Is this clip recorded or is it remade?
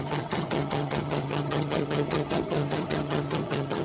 remade